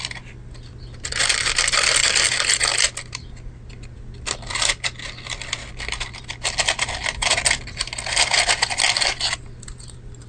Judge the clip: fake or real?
real